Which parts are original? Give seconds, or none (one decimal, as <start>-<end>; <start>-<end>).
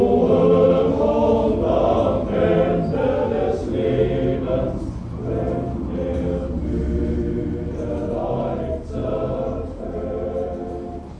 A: 0.0-9.0; 10.5-11.2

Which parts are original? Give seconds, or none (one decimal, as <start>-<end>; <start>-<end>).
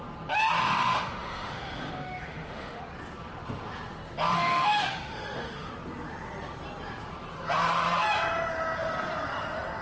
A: 0.0-0.6; 2.8-4.3; 5.7-9.8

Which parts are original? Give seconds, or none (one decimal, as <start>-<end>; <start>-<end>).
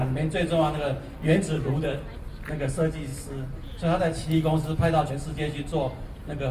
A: 0.0-6.5